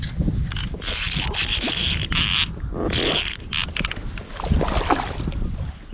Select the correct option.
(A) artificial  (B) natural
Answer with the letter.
B